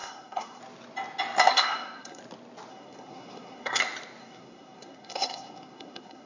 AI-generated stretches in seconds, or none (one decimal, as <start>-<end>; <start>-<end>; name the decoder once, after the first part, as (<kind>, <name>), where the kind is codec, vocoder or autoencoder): 0.0-0.6 (codec, SNAC); 1.5-2.2; 2.7-3.8; 4.2-6.3